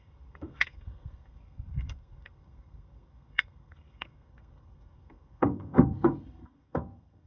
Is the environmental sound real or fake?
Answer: fake